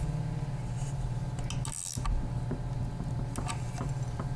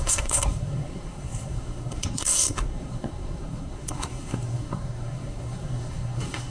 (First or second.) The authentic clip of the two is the first